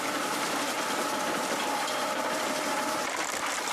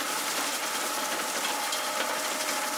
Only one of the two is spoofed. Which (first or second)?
first